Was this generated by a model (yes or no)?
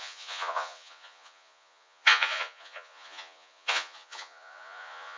yes